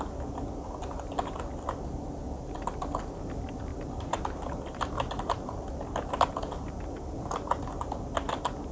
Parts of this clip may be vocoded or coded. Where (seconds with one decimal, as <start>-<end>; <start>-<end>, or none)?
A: none